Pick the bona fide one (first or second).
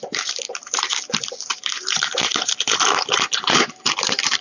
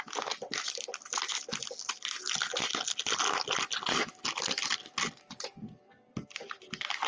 second